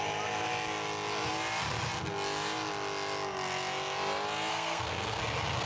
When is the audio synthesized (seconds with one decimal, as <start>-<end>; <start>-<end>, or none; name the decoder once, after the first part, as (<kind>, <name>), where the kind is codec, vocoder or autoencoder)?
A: 4.5-5.2 (codec, SNAC)